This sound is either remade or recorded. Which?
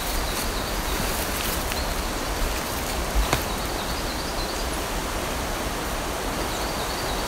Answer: remade